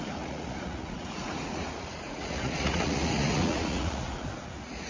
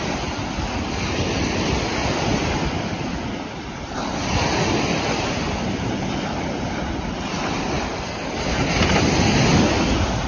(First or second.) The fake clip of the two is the first